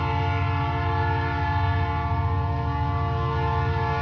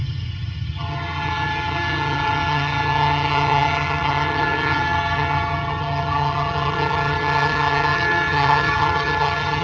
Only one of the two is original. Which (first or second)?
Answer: first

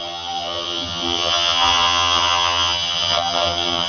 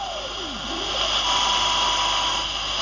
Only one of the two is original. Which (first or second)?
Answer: second